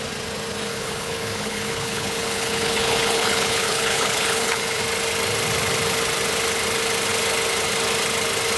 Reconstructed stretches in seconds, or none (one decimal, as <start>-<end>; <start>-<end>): 0.7-4.8